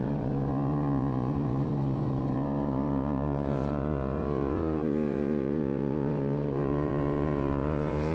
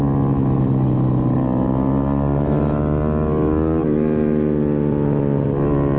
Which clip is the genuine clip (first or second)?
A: second